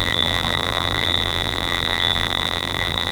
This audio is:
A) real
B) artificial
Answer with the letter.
B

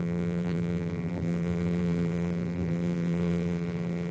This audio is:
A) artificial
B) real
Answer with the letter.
A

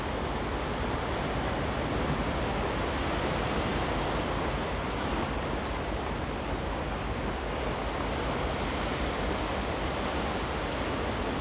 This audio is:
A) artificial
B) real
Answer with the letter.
B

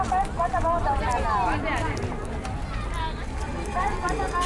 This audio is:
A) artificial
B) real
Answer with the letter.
B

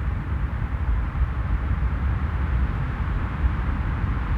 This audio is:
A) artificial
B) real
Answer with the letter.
A